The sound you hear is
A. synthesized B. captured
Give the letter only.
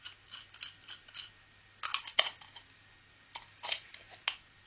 B